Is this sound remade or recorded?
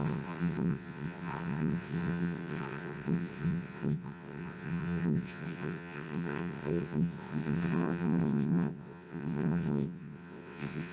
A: remade